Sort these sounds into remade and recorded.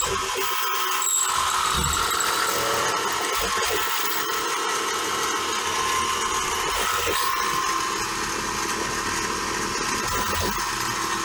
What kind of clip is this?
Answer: recorded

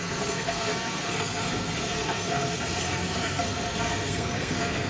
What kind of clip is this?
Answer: remade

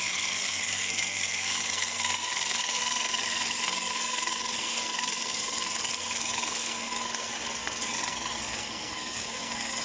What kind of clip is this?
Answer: remade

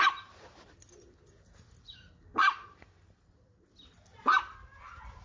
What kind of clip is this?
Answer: recorded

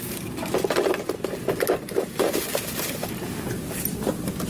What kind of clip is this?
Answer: recorded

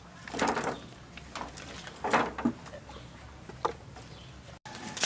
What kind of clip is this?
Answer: recorded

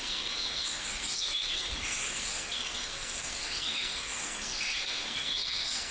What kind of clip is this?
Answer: remade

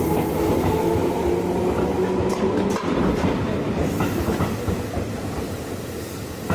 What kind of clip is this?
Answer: recorded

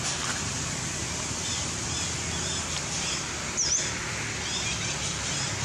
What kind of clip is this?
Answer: recorded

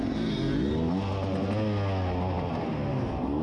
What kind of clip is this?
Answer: recorded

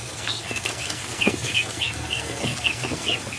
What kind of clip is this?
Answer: remade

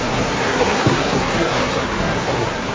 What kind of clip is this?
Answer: remade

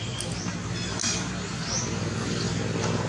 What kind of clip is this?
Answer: recorded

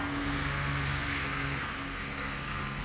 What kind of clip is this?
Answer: remade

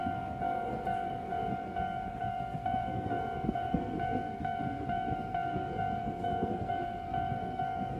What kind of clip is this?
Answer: remade